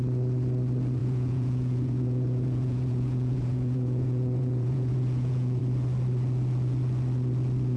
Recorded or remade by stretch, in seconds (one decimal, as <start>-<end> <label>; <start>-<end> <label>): 0.0-1.0 recorded; 1.0-5.6 remade; 5.6-7.8 recorded

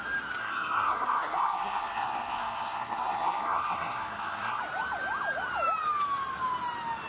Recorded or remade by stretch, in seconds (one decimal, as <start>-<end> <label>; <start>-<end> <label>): 0.0-0.4 recorded; 0.4-4.6 remade; 4.6-7.1 recorded